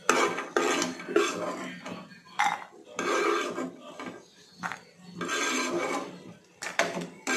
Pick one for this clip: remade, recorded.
recorded